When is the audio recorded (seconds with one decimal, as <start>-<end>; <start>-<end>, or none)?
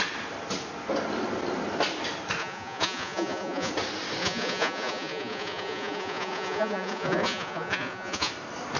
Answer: 0.0-2.4; 3.7-4.2; 8.3-8.8